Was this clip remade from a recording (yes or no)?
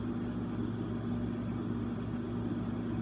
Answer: no